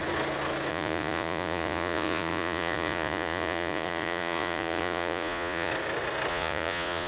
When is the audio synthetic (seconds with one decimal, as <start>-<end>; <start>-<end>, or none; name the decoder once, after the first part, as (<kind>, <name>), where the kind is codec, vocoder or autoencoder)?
0.7-5.7 (vocoder, Vocos); 6.3-7.1